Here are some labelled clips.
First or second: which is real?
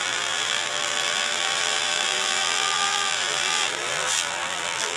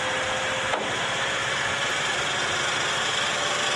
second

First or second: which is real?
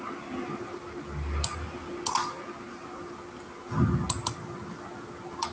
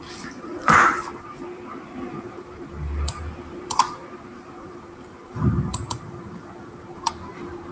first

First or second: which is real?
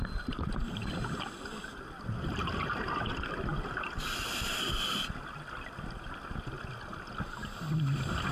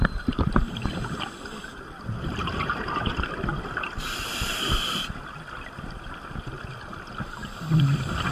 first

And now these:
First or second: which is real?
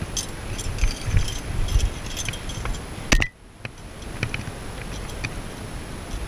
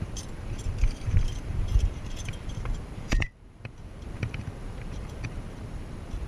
first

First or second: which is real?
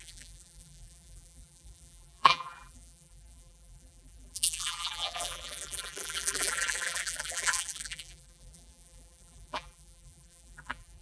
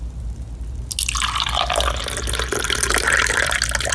second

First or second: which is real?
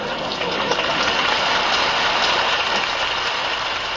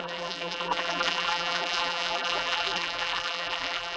first